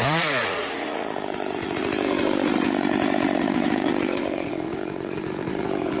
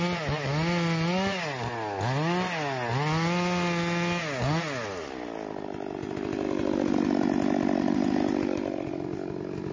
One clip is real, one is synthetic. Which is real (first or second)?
second